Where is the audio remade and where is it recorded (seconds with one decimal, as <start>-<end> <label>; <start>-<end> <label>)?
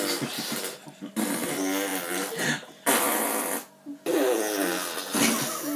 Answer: 0.0-5.8 recorded